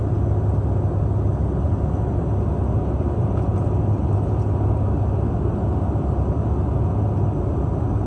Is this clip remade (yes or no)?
no